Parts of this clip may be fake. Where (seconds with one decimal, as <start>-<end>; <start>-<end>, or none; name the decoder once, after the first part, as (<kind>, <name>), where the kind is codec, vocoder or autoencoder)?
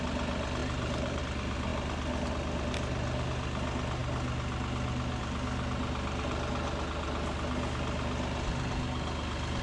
0.6-1.2 (vocoder, BigVGAN v2)